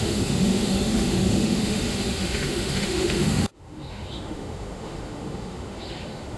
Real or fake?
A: fake